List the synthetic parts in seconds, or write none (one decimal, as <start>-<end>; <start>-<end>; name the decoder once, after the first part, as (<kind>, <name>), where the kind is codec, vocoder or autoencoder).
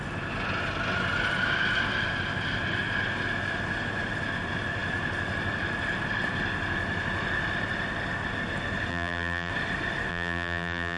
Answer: 8.9-9.5 (vocoder, BigVGAN v2); 10.1-11.0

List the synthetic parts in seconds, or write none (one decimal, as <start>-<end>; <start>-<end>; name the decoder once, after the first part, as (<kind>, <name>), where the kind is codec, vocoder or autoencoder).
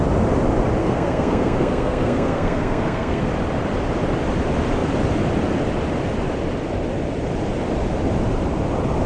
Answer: 0.8-3.3 (codec, SNAC)